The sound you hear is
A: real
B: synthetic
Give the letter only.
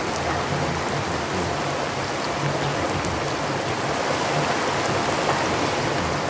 A